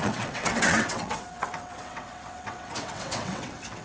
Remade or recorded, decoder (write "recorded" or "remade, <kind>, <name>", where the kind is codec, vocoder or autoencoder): remade, vocoder, WaveNeXt